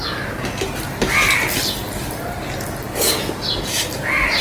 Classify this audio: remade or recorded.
recorded